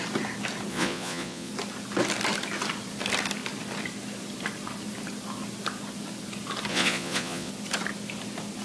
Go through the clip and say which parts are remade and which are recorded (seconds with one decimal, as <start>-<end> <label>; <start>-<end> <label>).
0.0-0.7 recorded; 0.7-1.5 remade; 1.5-6.7 recorded; 6.7-7.5 remade; 7.5-8.6 recorded